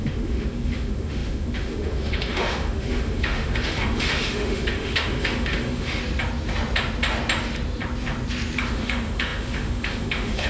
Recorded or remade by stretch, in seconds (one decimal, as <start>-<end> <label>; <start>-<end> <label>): 0.0-6.0 remade; 6.0-8.7 recorded; 8.7-10.5 remade